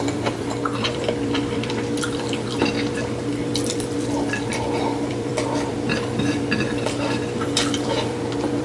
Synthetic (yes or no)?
yes